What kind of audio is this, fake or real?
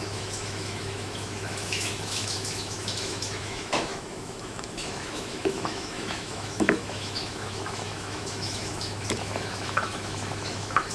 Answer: fake